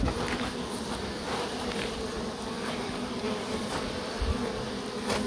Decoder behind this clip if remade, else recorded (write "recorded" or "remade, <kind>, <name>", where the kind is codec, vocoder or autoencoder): recorded